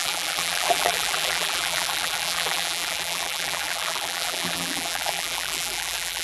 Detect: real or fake fake